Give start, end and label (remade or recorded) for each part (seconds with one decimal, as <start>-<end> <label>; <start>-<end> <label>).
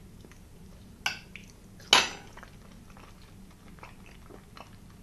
0.0-5.0 recorded